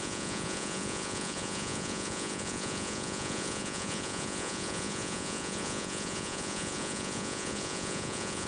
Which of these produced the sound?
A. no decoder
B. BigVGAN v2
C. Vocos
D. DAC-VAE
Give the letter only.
C